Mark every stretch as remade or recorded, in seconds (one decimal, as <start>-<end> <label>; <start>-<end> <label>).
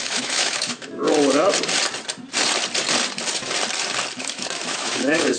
0.0-1.0 remade; 1.0-4.2 recorded; 4.2-5.4 remade